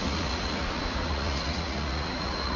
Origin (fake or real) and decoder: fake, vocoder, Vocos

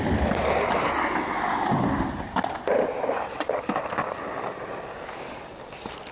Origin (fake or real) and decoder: real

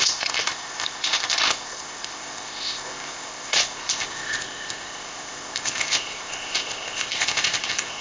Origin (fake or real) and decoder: fake, codec, ZipCodec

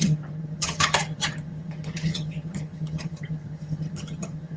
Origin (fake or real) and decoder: fake, vocoder, HiFi-GAN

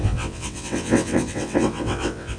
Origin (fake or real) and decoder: fake, vocoder, WaveNeXt